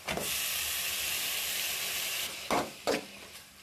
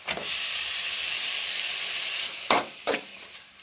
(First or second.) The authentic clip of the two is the first